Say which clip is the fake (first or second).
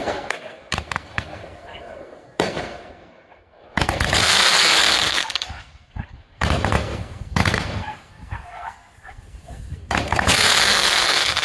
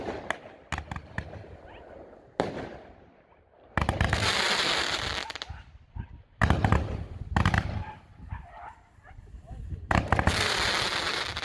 first